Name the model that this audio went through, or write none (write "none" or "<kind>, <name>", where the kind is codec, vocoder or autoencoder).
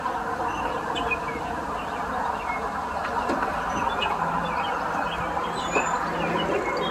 none